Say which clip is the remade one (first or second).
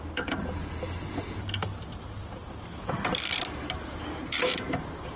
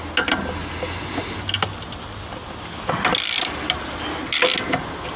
first